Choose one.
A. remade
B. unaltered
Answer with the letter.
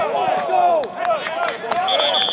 A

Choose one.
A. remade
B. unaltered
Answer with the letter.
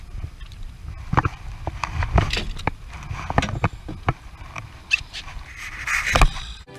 B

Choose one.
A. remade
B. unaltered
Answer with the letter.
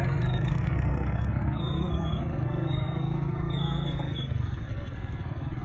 A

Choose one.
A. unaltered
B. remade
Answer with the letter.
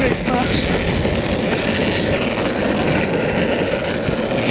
A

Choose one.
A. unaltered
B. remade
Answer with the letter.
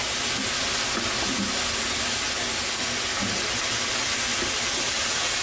A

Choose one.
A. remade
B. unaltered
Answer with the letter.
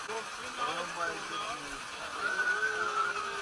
B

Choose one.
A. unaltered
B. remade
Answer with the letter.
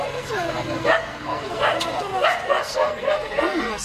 B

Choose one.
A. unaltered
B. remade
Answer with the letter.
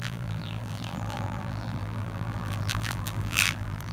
B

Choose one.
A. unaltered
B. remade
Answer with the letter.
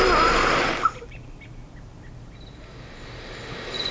A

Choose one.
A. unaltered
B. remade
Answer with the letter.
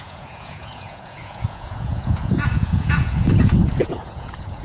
B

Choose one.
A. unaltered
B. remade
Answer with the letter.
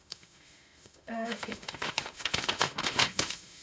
B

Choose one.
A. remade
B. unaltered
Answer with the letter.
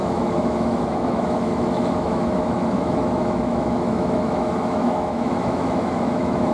A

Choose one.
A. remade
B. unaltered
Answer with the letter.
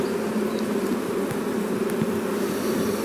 B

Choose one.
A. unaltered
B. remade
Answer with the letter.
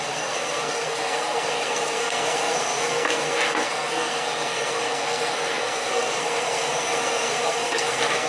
B